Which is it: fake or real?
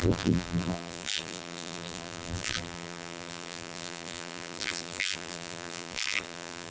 fake